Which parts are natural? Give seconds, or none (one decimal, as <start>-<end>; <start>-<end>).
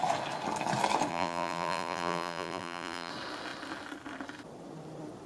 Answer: 0.0-1.1; 3.1-5.3